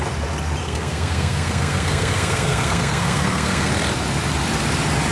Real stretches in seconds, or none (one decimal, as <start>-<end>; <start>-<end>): 0.0-0.6; 3.7-5.1

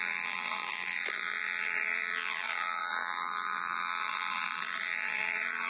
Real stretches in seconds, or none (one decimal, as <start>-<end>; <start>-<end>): none

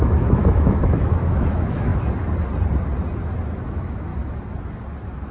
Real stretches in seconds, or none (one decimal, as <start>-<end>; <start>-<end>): 1.9-3.6; 4.1-5.3

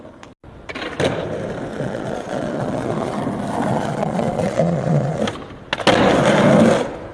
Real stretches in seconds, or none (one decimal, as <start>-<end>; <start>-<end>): 0.0-1.7; 3.2-3.7; 5.2-7.1

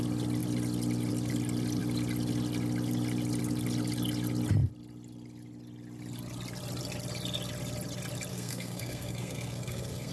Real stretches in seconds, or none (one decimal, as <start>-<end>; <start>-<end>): 0.0-8.3